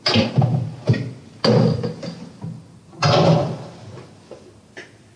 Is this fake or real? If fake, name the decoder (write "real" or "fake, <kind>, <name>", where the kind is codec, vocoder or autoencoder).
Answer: real